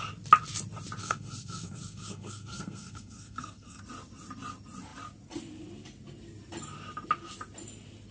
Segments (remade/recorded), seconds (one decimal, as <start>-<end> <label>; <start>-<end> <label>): 0.0-1.0 recorded; 1.0-3.8 remade; 3.8-8.1 recorded